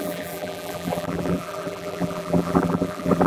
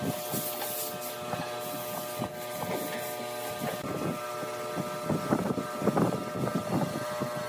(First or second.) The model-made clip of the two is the first